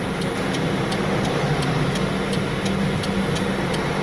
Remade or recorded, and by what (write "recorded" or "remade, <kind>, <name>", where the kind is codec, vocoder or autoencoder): recorded